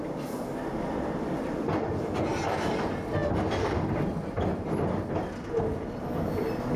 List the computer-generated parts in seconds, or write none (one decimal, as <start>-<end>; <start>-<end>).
none